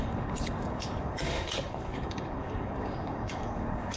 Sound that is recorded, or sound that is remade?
remade